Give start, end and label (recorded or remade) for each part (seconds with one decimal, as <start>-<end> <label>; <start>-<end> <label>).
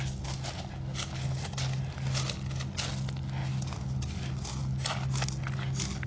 0.0-6.1 recorded